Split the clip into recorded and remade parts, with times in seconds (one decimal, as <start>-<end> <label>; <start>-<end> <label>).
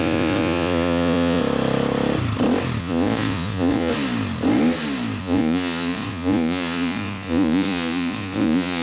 0.0-1.4 remade; 1.4-2.8 recorded; 2.8-3.9 remade; 3.9-5.2 recorded; 5.2-8.8 remade